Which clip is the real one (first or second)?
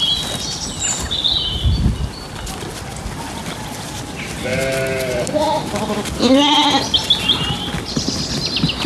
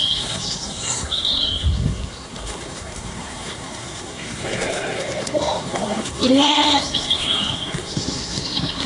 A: first